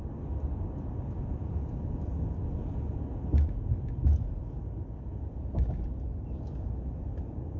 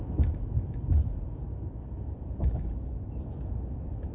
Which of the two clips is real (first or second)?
first